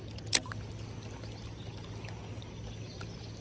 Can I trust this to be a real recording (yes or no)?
yes